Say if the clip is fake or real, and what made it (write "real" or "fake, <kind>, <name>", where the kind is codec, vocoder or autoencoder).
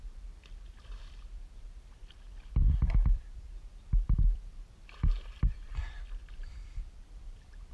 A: fake, vocoder, BigVGAN v2